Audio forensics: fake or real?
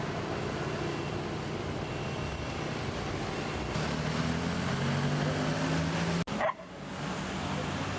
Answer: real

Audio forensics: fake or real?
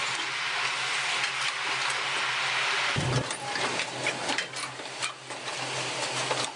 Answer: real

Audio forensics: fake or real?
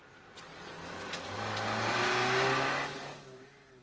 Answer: real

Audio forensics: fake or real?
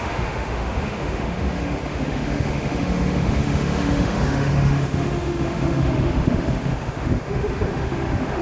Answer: fake